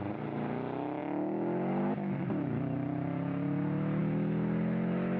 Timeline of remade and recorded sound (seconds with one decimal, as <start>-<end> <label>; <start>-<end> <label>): 0.0-5.2 recorded